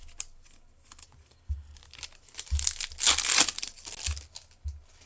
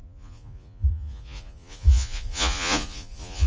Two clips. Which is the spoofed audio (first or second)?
second